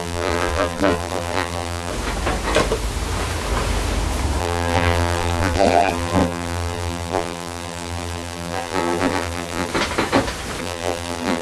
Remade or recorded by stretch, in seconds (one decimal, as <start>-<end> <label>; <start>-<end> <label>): 0.0-1.9 remade; 1.9-4.4 recorded; 4.4-9.7 remade; 9.7-10.6 recorded; 10.6-11.4 remade